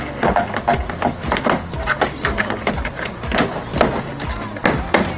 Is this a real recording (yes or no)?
yes